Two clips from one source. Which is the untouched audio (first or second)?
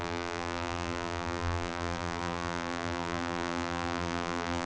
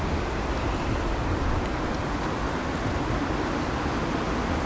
second